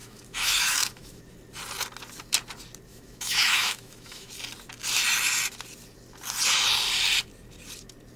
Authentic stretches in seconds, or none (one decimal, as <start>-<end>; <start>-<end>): 1.2-2.9; 4.3-8.2